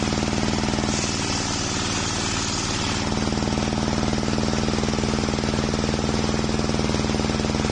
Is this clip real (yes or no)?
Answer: yes